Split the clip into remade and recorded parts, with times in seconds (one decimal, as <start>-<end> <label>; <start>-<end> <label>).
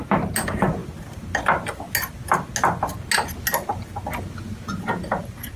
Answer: 0.0-5.6 recorded